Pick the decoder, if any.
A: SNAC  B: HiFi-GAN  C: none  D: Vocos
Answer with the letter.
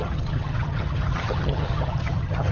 B